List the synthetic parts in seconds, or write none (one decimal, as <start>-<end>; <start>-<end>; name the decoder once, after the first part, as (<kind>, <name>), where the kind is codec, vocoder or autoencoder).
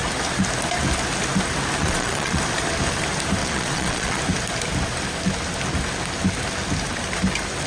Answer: 1.8-2.4 (vocoder, Vocos); 3.4-4.2